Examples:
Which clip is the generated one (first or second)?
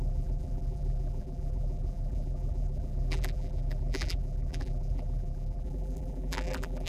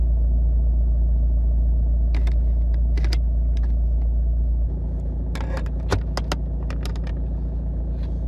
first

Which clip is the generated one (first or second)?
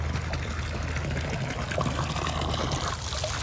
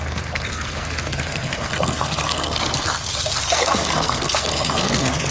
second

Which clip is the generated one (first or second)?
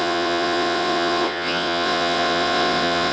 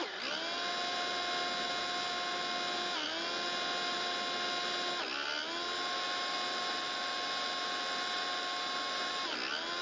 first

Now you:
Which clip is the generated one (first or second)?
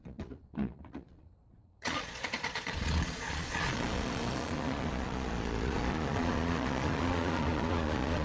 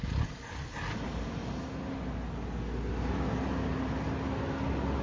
first